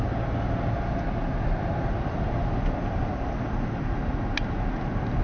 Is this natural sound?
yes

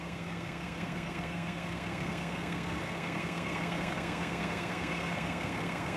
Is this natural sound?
no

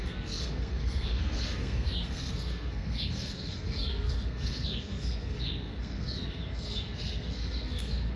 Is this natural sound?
no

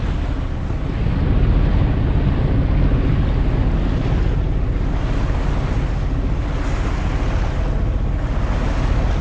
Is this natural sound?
yes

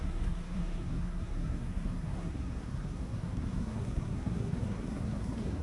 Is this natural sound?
no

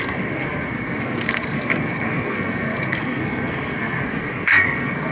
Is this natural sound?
no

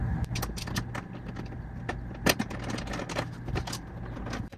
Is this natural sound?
yes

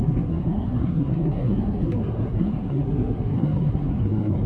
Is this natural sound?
no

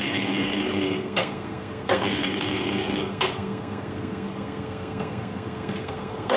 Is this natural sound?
no